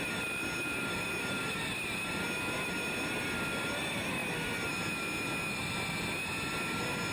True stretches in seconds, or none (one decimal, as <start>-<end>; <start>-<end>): 0.0-7.1